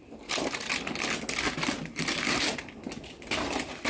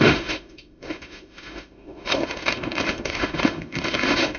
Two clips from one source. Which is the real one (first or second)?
first